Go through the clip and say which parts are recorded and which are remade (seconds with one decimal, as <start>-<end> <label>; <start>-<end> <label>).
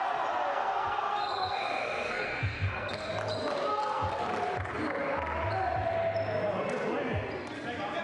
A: 0.0-0.5 recorded; 0.5-3.1 remade; 3.1-3.7 recorded; 3.7-4.2 remade; 4.2-8.0 recorded